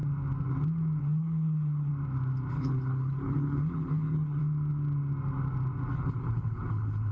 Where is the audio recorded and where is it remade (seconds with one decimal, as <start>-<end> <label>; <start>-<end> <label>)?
0.0-1.0 recorded; 1.0-1.9 remade; 1.9-2.5 recorded; 2.5-4.4 remade; 4.4-5.9 recorded; 5.9-7.1 remade